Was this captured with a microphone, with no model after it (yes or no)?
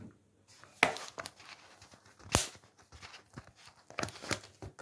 yes